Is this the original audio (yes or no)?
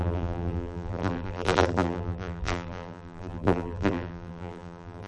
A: no